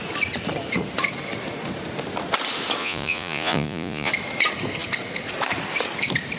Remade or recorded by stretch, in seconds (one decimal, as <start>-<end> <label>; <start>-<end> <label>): 0.0-2.8 recorded; 2.8-4.1 remade; 4.1-6.4 recorded